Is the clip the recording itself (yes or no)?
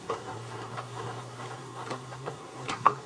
no